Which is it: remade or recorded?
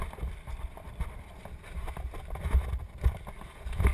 remade